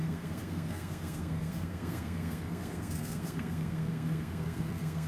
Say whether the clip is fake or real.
fake